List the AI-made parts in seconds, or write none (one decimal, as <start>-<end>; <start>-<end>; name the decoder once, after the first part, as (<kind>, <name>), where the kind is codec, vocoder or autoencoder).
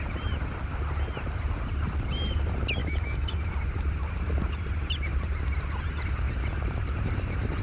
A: 2.8-3.5 (autoencoder, DAC-VAE)